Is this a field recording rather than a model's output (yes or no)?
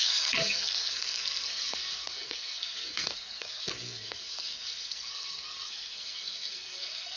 no